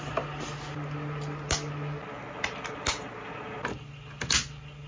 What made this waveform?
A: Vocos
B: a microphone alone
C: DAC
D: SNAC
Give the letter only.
B